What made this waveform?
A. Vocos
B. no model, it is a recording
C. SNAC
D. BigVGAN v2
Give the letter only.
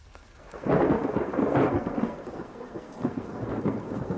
C